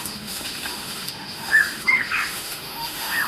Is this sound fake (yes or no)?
yes